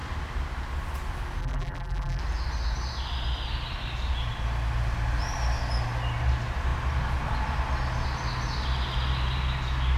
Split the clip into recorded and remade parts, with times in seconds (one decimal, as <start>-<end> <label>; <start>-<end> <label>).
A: 0.0-1.4 recorded; 1.4-2.2 remade; 2.2-10.0 recorded